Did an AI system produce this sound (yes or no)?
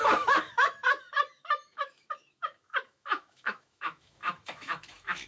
yes